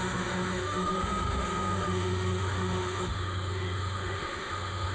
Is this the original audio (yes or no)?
no